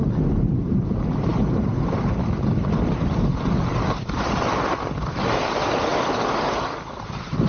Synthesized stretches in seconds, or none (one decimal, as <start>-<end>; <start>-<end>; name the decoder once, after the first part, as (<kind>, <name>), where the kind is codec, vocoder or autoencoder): none